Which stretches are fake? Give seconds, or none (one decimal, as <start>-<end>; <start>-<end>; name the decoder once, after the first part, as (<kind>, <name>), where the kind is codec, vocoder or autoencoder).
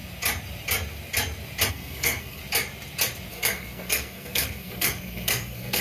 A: 1.7-2.4 (codec, SNAC); 3.3-5.8